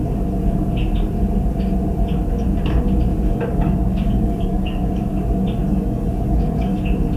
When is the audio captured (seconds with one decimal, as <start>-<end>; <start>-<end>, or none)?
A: 0.0-3.1; 5.1-5.7; 6.8-7.2